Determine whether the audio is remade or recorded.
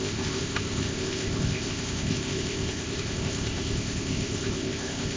remade